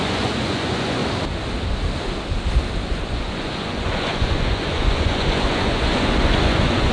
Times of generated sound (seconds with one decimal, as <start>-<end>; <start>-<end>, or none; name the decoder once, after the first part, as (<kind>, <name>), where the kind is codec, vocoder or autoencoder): 0.0-1.0 (vocoder, Vocos); 2.9-6.9